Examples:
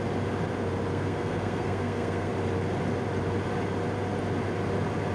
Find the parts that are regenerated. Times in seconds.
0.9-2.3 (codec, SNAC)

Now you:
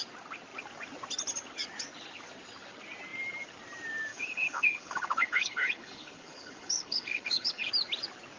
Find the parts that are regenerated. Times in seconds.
4.1-7.7 (codec, HILCodec)

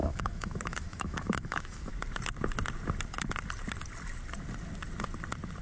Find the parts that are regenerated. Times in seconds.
0.0-1.9 (autoencoder, DAC-VAE)

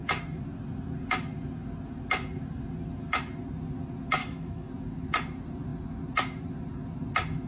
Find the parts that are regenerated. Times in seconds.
4.2-4.7 (autoencoder, DAC-VAE)

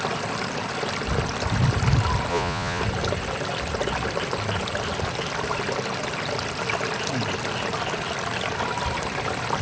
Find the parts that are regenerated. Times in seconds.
2.3-2.8 (vocoder, Vocos)

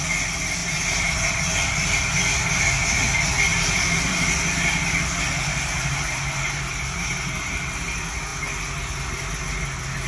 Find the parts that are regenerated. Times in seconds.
0.6-1.3 (vocoder, BigVGAN v2); 3.5-4.2; 5.5-7.6

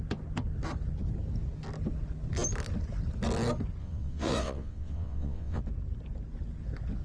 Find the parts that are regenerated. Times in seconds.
3.8-5.6 (vocoder, WaveNeXt)